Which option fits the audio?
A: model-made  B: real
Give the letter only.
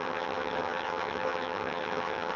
A